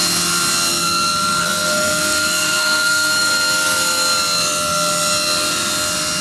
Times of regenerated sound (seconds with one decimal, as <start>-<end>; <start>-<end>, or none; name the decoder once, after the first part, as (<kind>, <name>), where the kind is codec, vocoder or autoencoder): 1.4-3.3 (codec, SNAC)

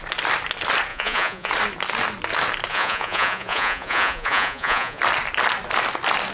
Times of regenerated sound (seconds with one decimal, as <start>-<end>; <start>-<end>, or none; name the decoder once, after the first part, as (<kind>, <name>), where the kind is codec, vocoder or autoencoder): 0.9-1.5 (vocoder, Vocos); 2.7-5.0

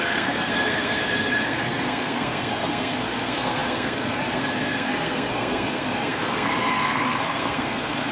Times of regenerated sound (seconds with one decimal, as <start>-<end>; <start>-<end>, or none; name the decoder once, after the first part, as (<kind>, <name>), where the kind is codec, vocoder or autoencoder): 0.0-8.1 (codec, SNAC)